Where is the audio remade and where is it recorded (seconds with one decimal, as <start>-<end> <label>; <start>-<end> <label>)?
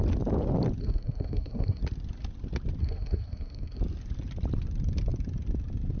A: 0.0-0.8 recorded; 0.8-1.8 remade; 1.8-2.8 recorded; 2.8-3.8 remade; 3.8-6.0 recorded